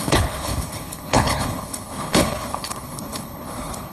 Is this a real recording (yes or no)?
no